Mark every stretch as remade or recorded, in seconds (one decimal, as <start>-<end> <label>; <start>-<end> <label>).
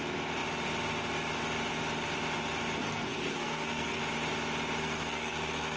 0.0-2.8 recorded; 2.8-4.0 remade; 4.0-4.8 recorded; 4.8-5.8 remade